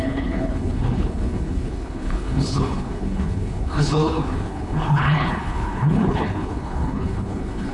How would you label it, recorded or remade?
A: remade